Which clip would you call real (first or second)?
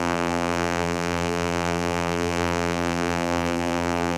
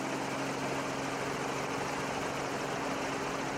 second